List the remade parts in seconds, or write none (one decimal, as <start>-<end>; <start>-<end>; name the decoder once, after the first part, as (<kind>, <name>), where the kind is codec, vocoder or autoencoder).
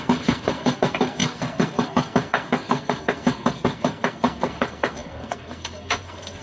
0.0-6.4 (codec, SNAC)